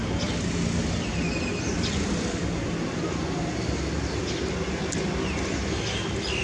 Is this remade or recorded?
recorded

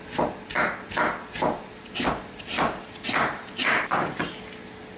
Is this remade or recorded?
remade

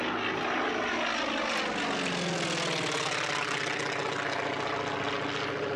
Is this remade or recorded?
recorded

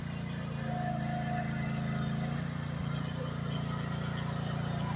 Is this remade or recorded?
recorded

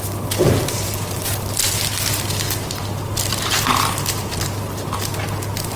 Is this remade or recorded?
recorded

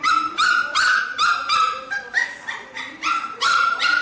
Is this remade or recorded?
remade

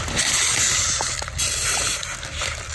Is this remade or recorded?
remade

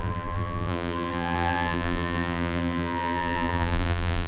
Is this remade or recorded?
remade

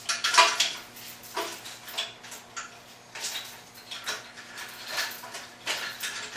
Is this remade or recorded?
recorded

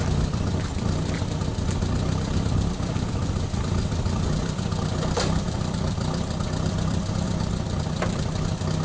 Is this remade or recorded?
remade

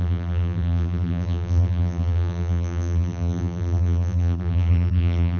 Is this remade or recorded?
remade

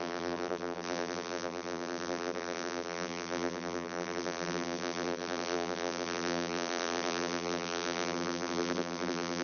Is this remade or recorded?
remade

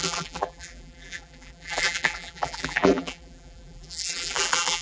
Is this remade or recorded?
remade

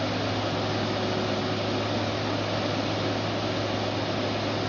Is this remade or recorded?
recorded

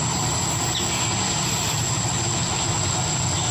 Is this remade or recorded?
recorded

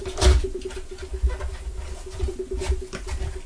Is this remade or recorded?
remade